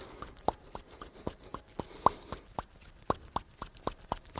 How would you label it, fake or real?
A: real